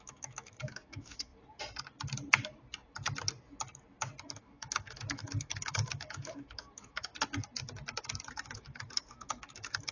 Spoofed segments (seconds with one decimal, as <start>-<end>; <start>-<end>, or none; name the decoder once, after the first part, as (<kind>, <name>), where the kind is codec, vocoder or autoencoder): 0.0-1.3 (autoencoder, DAC-VAE); 4.4-7.1; 8.3-9.9